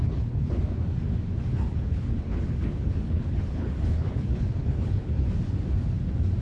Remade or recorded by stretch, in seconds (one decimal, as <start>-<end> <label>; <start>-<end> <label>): 0.0-0.7 remade; 0.7-1.5 recorded; 1.5-5.3 remade; 5.3-6.4 recorded